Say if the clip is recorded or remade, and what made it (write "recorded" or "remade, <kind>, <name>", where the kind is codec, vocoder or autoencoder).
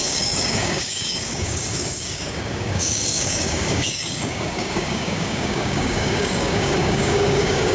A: remade, codec, DAC